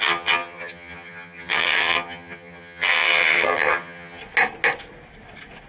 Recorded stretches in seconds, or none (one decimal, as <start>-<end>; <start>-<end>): 4.2-5.7